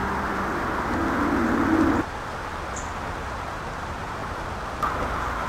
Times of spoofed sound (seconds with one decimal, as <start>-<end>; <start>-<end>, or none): none